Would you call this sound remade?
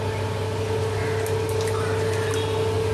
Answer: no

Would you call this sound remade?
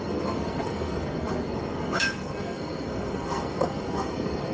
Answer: yes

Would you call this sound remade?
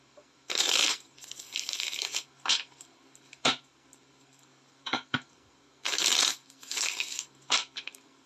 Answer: yes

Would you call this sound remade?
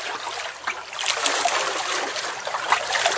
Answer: no